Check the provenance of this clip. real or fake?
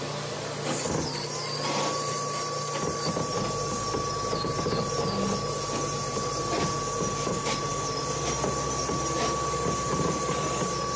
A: real